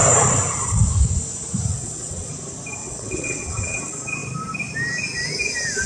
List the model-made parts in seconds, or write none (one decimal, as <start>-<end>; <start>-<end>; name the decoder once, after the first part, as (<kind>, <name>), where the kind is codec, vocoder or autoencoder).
1.7-2.3 (vocoder, WaveNeXt); 2.8-3.8